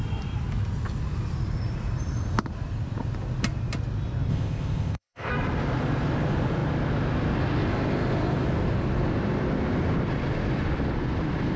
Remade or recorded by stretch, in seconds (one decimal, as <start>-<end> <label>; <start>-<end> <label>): 0.0-4.3 recorded; 4.3-5.3 remade; 5.3-11.6 recorded